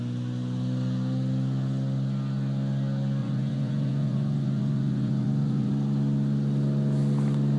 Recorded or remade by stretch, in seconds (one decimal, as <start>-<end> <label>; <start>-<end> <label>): 0.0-3.2 recorded; 3.2-5.7 remade; 5.7-7.6 recorded